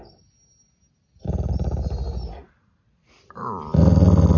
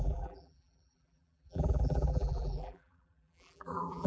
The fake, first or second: second